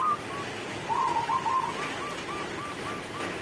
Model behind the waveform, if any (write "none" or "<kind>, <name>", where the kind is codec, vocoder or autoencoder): none